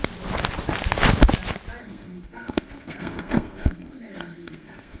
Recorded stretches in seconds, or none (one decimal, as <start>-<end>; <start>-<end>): 0.0-1.8